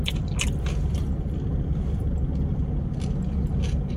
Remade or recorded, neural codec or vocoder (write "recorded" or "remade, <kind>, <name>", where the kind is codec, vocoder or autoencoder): recorded